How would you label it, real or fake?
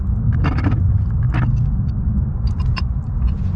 real